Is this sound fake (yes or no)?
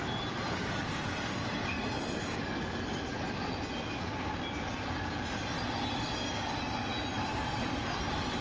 no